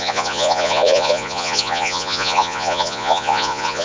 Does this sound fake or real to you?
fake